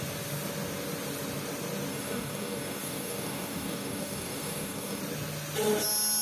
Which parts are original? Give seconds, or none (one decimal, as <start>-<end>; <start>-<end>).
0.0-1.9; 5.0-6.2